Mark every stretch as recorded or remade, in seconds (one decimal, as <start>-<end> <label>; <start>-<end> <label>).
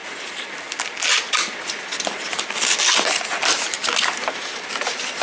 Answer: 0.0-5.2 recorded